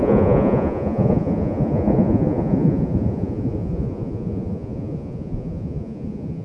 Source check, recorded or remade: remade